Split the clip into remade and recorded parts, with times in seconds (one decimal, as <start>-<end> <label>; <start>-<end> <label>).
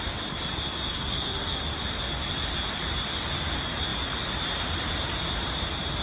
0.0-0.9 recorded; 0.9-1.6 remade; 1.6-6.0 recorded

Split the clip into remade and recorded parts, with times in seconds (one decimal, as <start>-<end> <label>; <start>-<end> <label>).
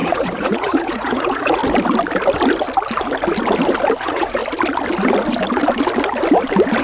0.0-1.6 remade; 1.6-4.0 recorded; 4.0-4.4 remade; 4.4-6.8 recorded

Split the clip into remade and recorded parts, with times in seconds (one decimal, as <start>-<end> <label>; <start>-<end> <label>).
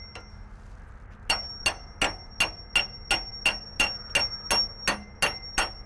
0.0-5.9 recorded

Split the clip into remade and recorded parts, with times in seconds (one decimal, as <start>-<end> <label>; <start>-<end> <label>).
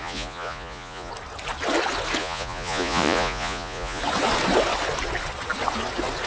0.0-1.1 remade; 1.1-2.2 recorded; 2.2-4.0 remade; 4.0-6.3 recorded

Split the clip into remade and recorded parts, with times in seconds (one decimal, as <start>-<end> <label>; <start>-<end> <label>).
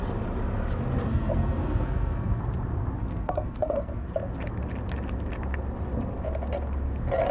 0.0-1.1 recorded; 1.1-2.4 remade; 2.4-3.0 recorded; 3.0-4.1 remade; 4.1-7.3 recorded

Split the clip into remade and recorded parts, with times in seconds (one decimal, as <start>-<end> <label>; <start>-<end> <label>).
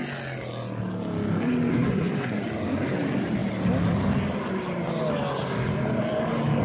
0.0-1.7 recorded; 1.7-2.4 remade; 2.4-6.6 recorded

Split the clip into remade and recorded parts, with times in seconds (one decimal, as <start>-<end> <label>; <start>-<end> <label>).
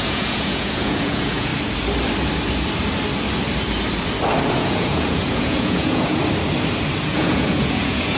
0.0-1.5 remade; 1.5-4.5 recorded; 4.5-6.2 remade; 6.2-7.0 recorded; 7.0-8.2 remade